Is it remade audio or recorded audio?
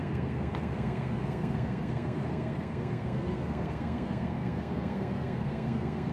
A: remade